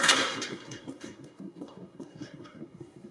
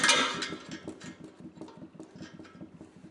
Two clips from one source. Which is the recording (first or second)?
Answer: second